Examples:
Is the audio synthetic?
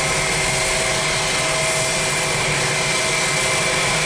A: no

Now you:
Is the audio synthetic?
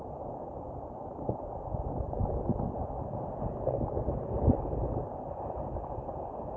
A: no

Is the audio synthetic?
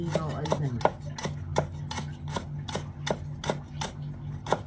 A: no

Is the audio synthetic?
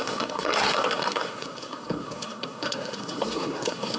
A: yes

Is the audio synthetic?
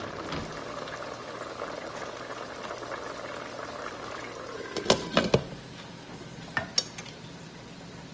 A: no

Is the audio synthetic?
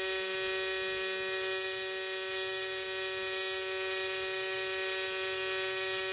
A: no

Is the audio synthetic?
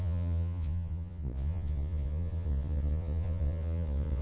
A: yes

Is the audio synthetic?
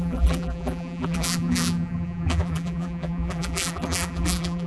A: yes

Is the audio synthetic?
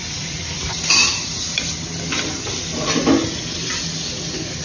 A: no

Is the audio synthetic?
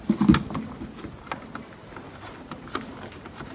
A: no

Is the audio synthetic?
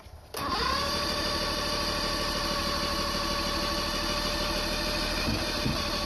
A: no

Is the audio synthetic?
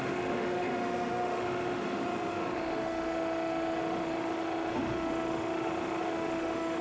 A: yes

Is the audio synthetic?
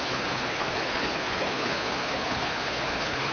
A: yes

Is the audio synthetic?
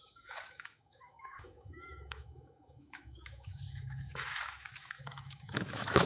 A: yes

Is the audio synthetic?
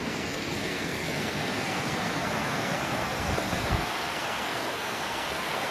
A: yes